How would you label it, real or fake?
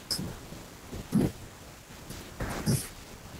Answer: real